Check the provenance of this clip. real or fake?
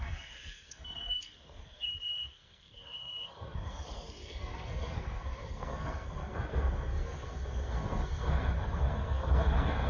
fake